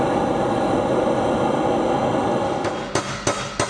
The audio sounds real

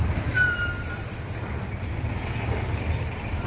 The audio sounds fake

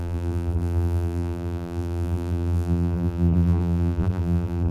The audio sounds fake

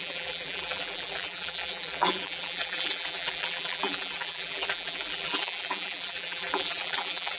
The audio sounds fake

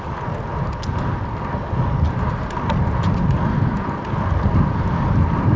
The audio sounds real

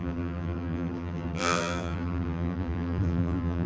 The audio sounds fake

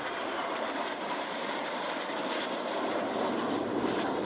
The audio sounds fake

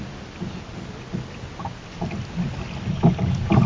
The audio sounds real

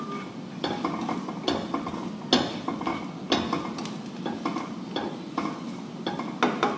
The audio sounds real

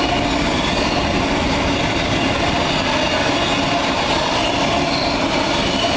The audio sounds real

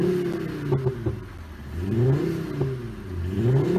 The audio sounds real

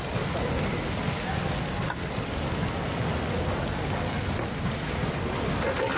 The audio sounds real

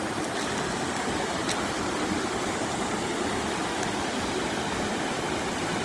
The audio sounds real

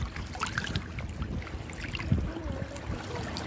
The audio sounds real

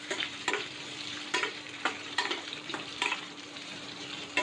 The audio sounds fake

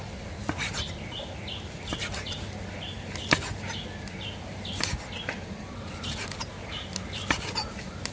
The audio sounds real